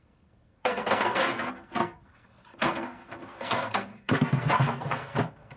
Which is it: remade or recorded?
remade